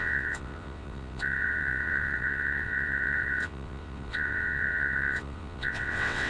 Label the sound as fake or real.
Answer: fake